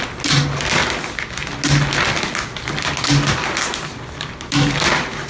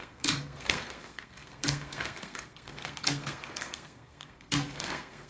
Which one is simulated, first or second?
second